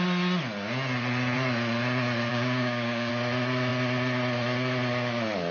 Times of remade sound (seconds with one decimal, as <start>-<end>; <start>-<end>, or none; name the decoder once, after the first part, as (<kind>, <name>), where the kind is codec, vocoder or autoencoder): 2.3-3.1 (codec, DAC)